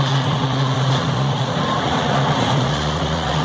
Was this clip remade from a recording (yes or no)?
yes